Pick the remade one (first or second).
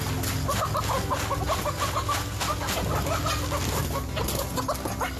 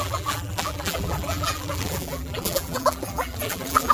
second